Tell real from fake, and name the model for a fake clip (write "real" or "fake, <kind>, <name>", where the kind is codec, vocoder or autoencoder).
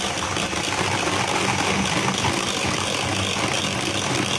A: real